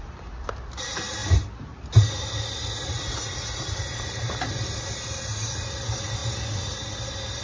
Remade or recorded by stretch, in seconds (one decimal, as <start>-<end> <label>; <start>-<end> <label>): 0.0-7.4 recorded